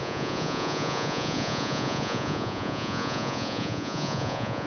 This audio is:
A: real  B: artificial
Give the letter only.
B